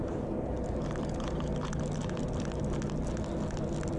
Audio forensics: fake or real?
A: real